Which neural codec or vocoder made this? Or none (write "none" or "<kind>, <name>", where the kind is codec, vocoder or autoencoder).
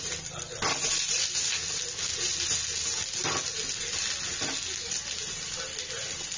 none